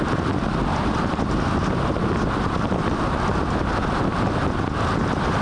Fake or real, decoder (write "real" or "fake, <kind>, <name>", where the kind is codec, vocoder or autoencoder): real